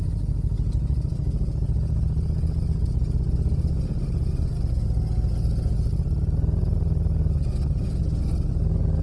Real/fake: real